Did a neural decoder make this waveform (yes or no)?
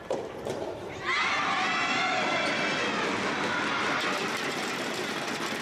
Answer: no